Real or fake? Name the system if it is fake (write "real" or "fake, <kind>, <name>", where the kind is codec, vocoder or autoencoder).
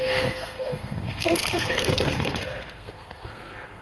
fake, codec, SNAC